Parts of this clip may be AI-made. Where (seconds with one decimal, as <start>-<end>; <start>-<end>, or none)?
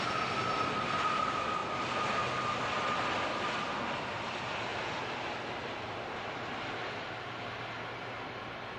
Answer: none